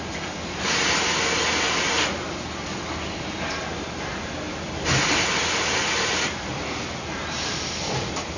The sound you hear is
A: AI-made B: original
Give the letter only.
B